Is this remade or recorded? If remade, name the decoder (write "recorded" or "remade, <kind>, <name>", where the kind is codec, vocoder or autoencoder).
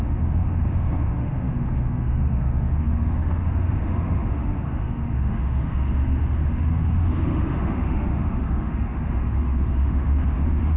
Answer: remade, autoencoder, DAC-VAE